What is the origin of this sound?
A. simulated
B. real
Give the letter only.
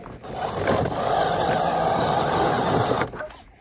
B